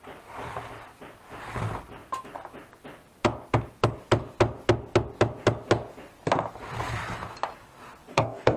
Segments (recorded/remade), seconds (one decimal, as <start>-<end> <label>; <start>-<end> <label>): 0.0-8.1 recorded; 8.1-8.6 remade